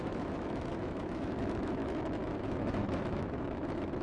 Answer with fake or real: fake